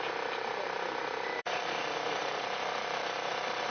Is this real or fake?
fake